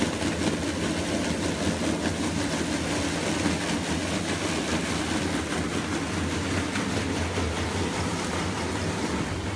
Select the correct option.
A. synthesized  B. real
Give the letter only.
B